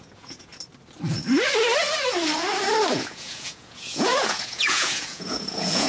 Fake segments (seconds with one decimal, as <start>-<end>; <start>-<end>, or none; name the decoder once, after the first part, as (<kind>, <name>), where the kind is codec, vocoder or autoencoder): 0.0-0.5 (vocoder, Vocos); 2.9-5.9